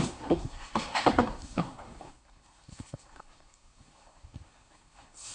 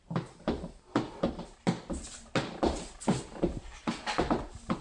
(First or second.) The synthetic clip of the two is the first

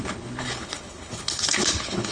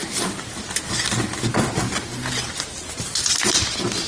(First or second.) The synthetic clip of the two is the first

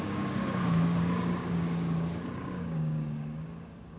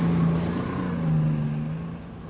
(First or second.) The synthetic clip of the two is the first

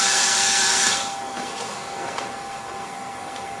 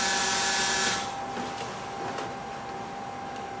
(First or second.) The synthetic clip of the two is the first